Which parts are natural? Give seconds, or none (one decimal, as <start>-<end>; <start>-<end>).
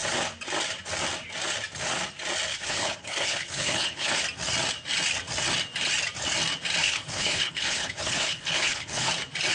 0.0-2.5; 4.2-6.8; 9.1-9.5